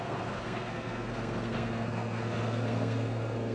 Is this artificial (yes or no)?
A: yes